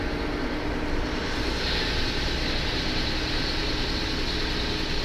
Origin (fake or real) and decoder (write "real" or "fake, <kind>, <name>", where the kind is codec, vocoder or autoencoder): real